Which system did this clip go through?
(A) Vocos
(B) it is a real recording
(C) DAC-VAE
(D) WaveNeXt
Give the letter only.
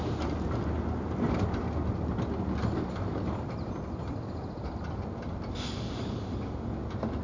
B